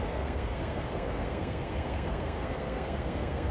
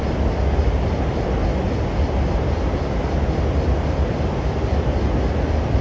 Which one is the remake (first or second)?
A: first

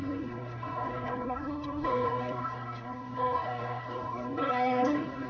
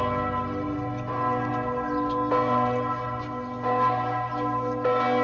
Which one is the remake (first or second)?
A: first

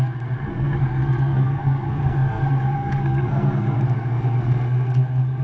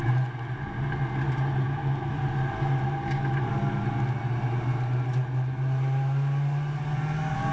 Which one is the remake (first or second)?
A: first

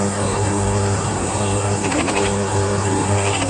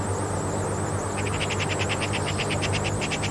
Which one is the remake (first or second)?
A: first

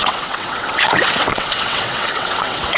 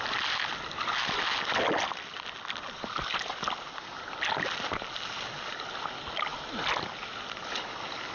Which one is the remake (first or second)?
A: first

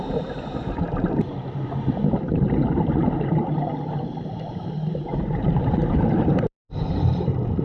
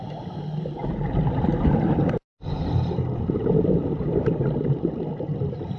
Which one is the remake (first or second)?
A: first